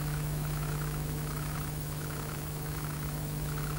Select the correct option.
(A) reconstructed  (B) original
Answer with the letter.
A